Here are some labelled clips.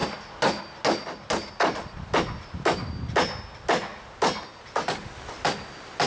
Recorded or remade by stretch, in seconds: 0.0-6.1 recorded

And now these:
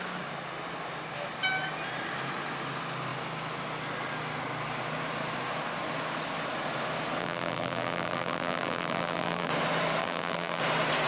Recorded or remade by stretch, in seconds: 0.0-7.2 recorded; 7.2-9.5 remade; 9.5-10.0 recorded; 10.0-10.6 remade; 10.6-11.1 recorded

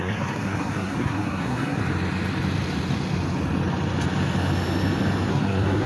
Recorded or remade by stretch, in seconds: 0.0-1.8 remade; 1.8-5.3 recorded; 5.3-5.9 remade

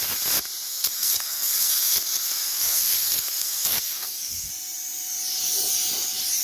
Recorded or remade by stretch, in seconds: 0.0-0.7 recorded; 0.7-4.5 remade; 4.5-6.4 recorded

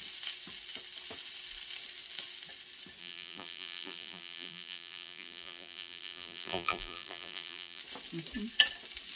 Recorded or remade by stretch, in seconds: 0.0-3.0 recorded; 3.0-7.8 remade; 7.8-9.2 recorded